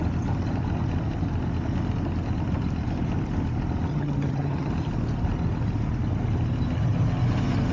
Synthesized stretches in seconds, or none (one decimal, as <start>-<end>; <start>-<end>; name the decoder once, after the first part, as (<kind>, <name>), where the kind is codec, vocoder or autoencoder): 3.9-4.7 (vocoder, HiFi-GAN)